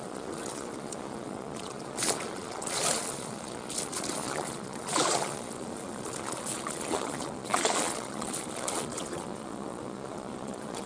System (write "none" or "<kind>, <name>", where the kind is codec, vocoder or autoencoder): vocoder, Vocos